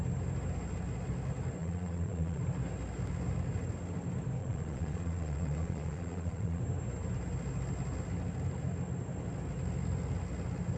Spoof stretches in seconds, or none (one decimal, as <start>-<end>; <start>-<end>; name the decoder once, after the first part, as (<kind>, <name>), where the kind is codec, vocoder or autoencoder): 1.6-2.4 (vocoder, Vocos); 4.4-6.6